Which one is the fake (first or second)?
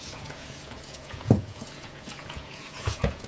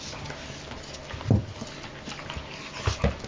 first